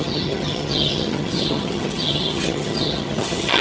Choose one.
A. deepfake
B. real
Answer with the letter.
A